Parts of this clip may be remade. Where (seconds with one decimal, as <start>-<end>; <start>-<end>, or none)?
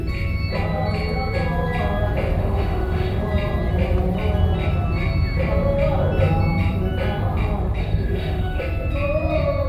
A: 2.4-3.2; 7.8-8.6